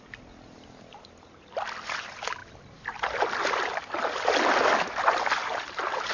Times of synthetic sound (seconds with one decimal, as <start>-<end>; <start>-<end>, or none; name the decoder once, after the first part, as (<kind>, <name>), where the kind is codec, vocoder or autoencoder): none